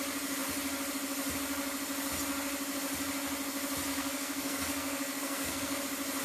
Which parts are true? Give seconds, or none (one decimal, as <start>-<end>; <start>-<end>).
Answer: 0.0-3.9; 5.8-6.2